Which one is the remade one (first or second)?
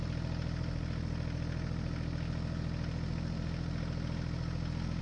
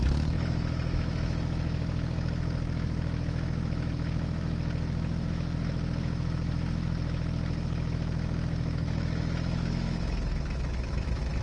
second